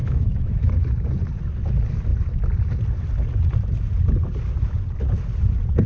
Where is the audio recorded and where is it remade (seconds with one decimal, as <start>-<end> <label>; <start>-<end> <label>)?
0.0-0.7 remade; 0.7-5.9 recorded